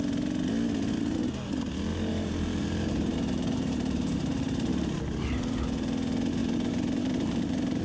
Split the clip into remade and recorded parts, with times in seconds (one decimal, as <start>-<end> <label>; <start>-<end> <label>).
0.0-1.9 recorded; 1.9-4.7 remade; 4.7-6.4 recorded; 6.4-7.8 remade